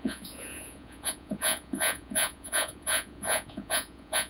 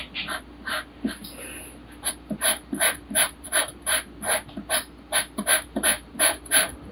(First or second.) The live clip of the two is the second